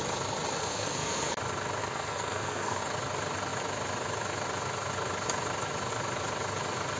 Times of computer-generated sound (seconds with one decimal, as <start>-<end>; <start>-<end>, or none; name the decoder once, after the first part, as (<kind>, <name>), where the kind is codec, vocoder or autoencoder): 0.6-1.3 (codec, SNAC); 1.8-2.8